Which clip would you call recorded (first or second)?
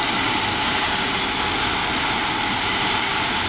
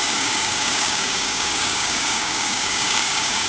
first